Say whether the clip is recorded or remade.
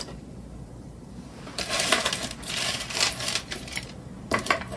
remade